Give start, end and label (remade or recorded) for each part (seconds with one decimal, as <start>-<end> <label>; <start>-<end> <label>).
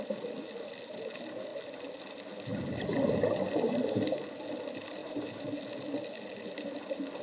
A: 0.0-2.5 recorded; 2.5-4.2 remade; 4.2-5.0 recorded; 5.0-5.6 remade; 5.6-7.2 recorded